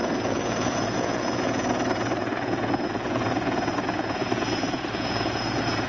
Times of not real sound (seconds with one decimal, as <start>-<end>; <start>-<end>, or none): 0.0-5.9